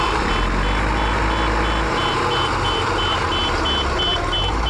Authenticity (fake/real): real